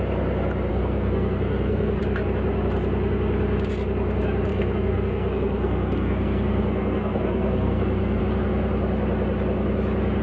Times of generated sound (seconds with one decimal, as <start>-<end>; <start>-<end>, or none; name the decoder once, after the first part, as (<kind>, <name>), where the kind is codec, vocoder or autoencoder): 0.7-2.0 (codec, SNAC); 4.5-8.2